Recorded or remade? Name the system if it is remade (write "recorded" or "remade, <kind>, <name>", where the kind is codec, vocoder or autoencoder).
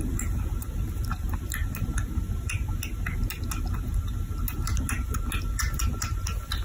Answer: recorded